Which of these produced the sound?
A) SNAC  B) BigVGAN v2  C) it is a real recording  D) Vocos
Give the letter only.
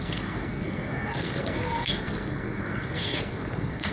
A